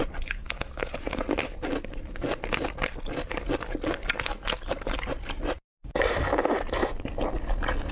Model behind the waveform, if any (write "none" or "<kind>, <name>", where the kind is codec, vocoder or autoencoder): none